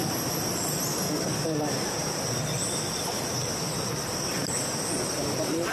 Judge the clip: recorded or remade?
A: recorded